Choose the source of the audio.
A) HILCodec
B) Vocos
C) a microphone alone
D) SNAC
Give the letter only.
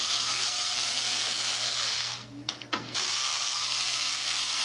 D